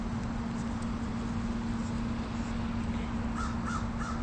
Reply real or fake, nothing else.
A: real